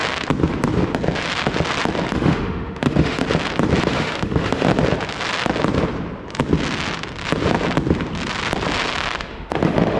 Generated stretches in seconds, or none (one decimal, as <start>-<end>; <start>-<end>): 2.1-3.2; 3.8-4.7; 9.2-10.0